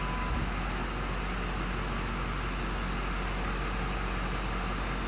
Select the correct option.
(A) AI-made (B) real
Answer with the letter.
B